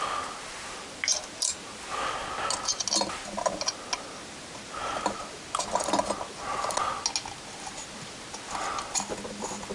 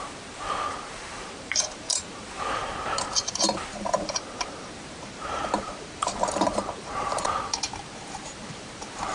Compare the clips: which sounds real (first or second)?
first